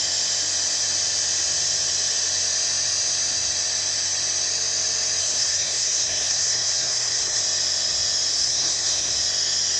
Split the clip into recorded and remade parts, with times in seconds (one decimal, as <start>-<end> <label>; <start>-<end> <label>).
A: 0.0-5.2 recorded; 5.2-7.4 remade; 7.4-8.3 recorded; 8.3-9.1 remade; 9.1-9.8 recorded